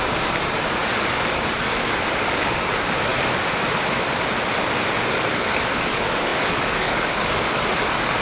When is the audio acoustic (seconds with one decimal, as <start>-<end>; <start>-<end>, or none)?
3.1-5.1